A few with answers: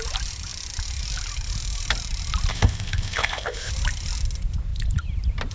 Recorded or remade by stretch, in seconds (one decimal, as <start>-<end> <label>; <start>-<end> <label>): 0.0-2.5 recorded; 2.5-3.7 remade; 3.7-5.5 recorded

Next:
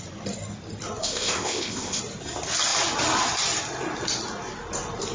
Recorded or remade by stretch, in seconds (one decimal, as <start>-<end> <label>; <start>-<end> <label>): 0.0-1.0 recorded; 1.0-2.0 remade; 2.0-5.1 recorded

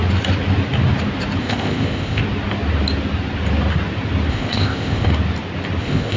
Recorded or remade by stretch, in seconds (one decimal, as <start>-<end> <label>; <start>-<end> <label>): 0.0-1.4 recorded; 1.4-2.2 remade; 2.2-4.3 recorded; 4.3-5.1 remade; 5.1-5.8 recorded; 5.8-6.2 remade